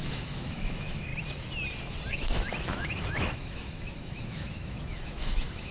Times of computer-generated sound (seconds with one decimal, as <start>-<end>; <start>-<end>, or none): 0.0-1.1; 2.1-5.7